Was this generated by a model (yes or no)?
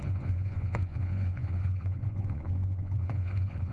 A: yes